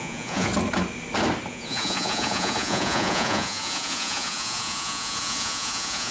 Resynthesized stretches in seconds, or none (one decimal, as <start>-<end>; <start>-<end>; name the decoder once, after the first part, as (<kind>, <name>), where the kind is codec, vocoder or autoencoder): 0.0-0.5 (vocoder, Vocos); 1.5-6.1